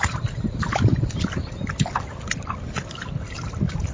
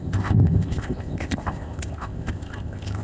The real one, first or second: first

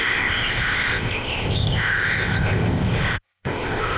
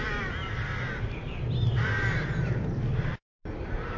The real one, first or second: second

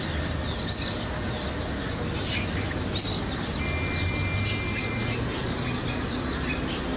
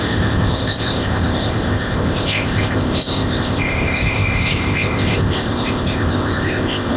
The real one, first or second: first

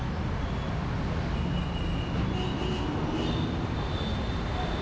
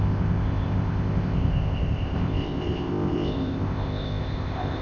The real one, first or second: first